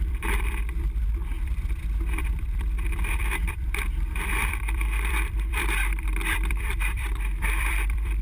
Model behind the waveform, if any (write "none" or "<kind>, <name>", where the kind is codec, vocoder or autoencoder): vocoder, BigVGAN v2